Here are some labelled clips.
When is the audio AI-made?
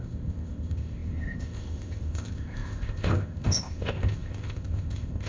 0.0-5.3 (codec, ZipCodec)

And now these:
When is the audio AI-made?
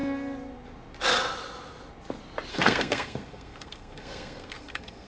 2.5-5.1 (codec, SNAC)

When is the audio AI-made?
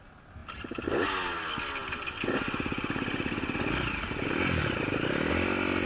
none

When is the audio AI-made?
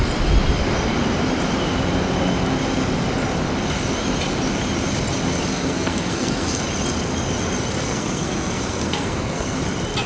5.5-6.6 (codec, SNAC); 7.8-9.6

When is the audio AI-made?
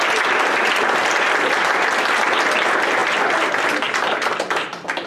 none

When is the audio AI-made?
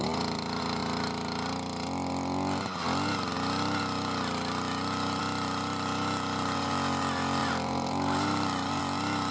7.4-8.8 (vocoder, BigVGAN v2)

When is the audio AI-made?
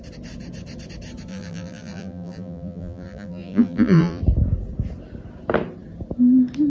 1.3-4.2 (vocoder, BigVGAN v2)